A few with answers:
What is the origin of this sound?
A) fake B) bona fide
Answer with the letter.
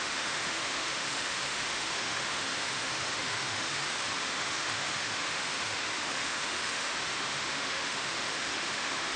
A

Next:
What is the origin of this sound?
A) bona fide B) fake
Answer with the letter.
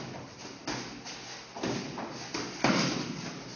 A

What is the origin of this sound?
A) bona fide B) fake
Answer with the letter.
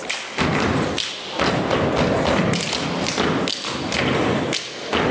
A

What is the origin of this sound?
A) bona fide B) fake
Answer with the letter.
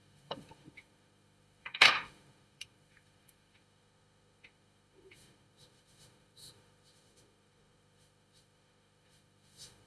B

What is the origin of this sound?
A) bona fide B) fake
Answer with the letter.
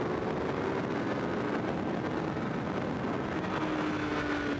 A